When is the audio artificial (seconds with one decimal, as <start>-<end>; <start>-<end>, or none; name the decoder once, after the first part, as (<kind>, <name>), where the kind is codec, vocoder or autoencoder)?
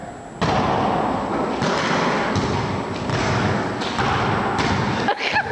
3.1-3.7 (codec, DAC)